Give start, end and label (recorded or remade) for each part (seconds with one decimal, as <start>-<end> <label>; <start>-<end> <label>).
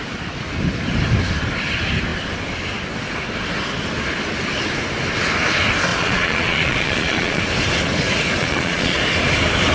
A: 0.0-5.9 recorded; 5.9-7.4 remade; 7.4-8.4 recorded; 8.4-9.0 remade; 9.0-9.7 recorded